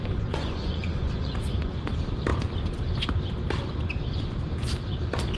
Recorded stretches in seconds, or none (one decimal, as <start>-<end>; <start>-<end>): 1.9-5.4